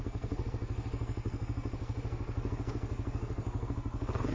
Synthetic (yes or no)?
yes